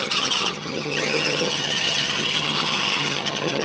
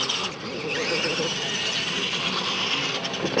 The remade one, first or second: first